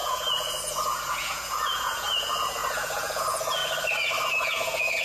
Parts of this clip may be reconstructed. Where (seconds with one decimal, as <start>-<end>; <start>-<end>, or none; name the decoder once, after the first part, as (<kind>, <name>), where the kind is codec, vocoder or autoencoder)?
0.0-3.6 (vocoder, Vocos); 4.3-5.0